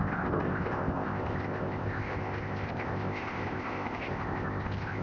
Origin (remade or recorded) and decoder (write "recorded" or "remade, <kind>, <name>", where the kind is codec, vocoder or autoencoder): remade, codec, ZipCodec